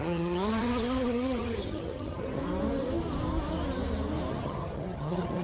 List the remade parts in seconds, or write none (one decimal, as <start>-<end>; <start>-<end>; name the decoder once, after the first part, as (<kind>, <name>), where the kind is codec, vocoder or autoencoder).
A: 0.0-2.4 (vocoder, HiFi-GAN); 4.3-5.4

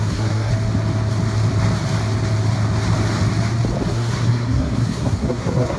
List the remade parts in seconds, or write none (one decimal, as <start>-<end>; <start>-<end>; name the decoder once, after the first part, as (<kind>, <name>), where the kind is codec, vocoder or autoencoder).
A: 0.0-0.5 (codec, SNAC); 3.9-5.8